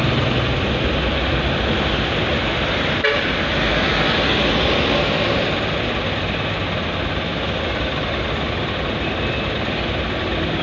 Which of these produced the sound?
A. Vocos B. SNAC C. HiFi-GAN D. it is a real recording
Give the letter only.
D